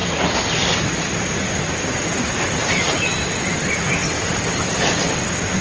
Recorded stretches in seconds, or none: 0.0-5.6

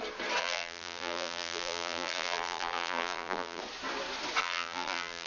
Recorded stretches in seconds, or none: 0.0-0.4; 3.6-4.4

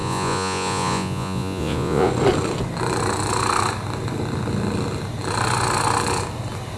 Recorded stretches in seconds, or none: 2.1-6.8

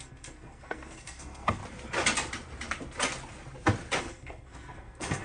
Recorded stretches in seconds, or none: 1.6-4.0

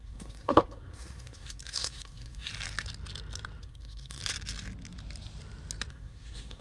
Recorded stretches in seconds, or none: 2.5-3.6; 4.2-5.9

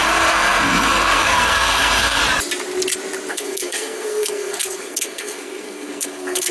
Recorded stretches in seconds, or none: 2.2-3.3